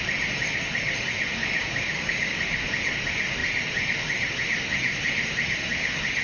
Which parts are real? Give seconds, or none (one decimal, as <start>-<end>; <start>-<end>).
0.0-1.4; 2.4-6.2